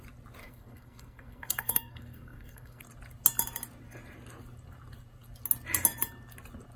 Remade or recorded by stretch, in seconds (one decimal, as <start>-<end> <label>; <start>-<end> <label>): 0.0-0.4 recorded; 0.4-2.8 remade; 2.8-6.8 recorded